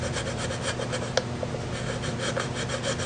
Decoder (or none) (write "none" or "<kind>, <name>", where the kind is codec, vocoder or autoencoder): none